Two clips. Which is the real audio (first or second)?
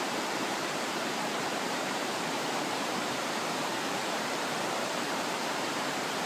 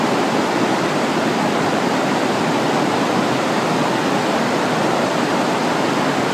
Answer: second